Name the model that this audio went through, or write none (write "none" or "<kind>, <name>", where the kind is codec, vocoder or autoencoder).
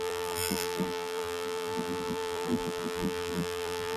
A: vocoder, BigVGAN v2